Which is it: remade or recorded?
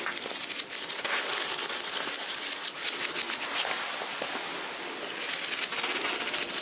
recorded